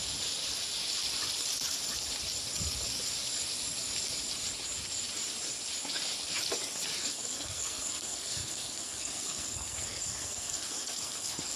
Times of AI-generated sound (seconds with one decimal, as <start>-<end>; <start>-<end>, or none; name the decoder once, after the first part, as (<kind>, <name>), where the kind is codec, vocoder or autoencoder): 7.0-11.6 (codec, SNAC)

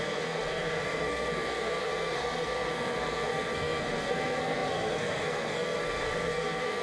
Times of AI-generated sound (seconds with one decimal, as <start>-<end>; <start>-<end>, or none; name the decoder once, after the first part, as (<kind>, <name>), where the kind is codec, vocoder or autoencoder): 0.0-6.8 (codec, SNAC)

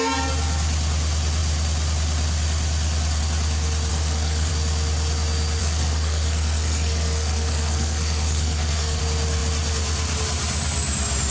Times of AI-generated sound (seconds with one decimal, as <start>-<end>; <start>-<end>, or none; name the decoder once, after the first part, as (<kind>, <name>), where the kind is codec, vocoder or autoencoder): 3.9-4.5 (codec, SNAC); 5.6-9.0

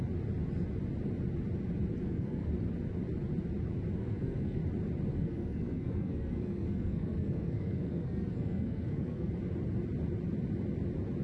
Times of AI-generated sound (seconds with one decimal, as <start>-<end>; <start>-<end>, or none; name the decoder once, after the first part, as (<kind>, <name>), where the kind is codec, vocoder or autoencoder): 2.0-2.5 (codec, SNAC); 4.0-4.6; 5.1-9.3

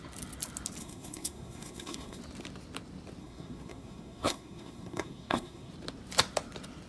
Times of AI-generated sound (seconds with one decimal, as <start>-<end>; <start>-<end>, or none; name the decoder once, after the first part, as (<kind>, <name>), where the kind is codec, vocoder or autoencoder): 0.8-2.2 (codec, SNAC); 3.2-5.7

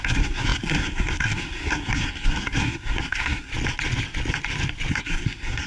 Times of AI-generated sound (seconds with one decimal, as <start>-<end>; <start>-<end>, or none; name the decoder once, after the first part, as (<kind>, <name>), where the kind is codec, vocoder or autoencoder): 0.0-3.5 (codec, SNAC); 4.9-5.7